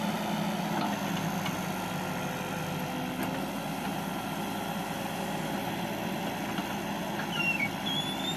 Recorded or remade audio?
recorded